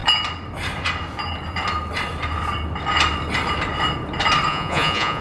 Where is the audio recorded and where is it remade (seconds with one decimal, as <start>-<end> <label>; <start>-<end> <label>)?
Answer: 0.0-4.5 recorded; 4.5-5.2 remade